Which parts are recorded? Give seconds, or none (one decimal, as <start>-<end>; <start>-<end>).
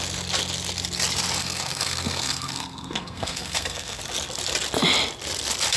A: 0.0-1.4; 4.0-5.8